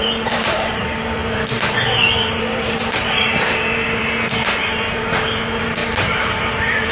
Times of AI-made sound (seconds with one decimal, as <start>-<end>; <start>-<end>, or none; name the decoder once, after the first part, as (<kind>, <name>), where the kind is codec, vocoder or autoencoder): 0.0-4.0 (vocoder, BigVGAN v2); 4.6-6.9

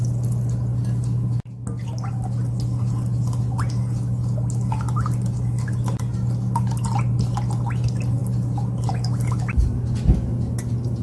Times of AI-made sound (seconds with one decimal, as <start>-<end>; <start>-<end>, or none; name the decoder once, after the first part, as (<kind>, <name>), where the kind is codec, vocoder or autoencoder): none

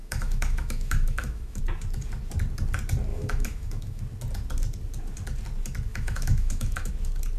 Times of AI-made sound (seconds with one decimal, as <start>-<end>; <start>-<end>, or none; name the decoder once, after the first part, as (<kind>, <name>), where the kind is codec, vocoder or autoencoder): 0.0-1.6 (autoencoder, DAC-VAE); 3.1-4.0; 5.9-6.9

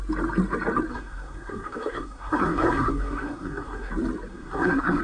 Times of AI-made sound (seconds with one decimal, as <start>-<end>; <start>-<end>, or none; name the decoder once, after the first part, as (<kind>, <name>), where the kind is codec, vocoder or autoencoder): 0.9-3.9 (codec, SNAC); 4.3-5.0